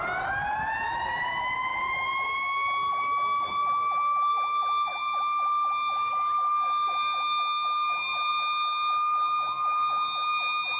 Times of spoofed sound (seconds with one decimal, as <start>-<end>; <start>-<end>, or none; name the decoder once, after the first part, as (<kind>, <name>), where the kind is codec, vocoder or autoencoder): none